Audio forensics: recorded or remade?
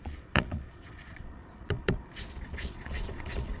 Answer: remade